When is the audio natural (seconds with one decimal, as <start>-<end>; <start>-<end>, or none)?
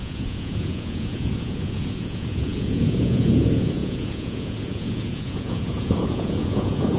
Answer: none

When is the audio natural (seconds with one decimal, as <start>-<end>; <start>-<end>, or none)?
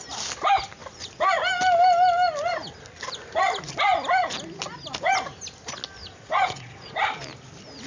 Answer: 0.0-6.0; 6.9-7.9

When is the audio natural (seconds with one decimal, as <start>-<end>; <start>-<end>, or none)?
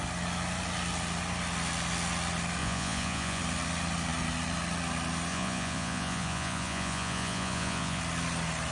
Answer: 0.0-2.6; 3.4-5.3; 8.0-8.7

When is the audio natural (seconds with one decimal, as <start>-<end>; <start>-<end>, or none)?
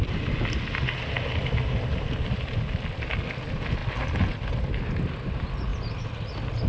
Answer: 0.0-6.7